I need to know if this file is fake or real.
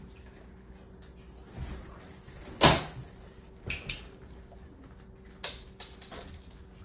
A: real